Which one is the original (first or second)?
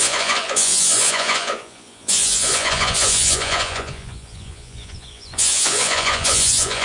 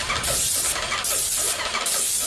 second